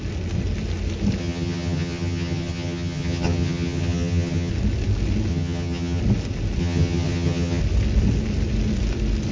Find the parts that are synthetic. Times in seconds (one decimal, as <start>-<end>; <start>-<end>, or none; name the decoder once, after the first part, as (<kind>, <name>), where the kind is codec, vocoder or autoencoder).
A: 1.2-4.5 (vocoder, HiFi-GAN); 5.3-6.0; 6.6-7.6